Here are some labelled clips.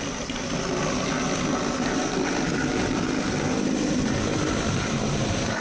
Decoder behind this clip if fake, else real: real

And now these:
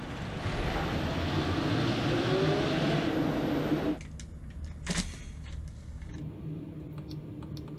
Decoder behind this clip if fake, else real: real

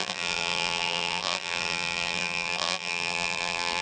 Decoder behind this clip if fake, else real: fake, vocoder, BigVGAN v2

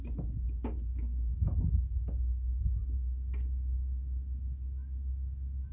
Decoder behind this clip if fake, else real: real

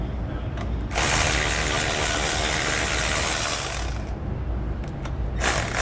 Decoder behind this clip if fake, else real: real